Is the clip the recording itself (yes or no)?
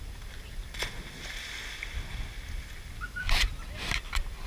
yes